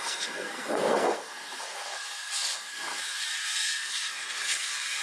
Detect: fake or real fake